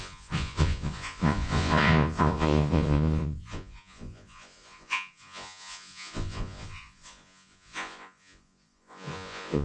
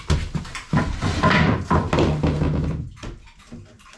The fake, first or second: first